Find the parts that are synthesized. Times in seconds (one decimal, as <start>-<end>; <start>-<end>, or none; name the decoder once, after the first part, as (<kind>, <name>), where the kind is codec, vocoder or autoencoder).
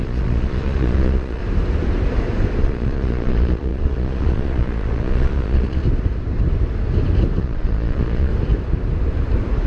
0.0-1.4 (vocoder, Vocos); 2.6-5.8; 7.4-8.3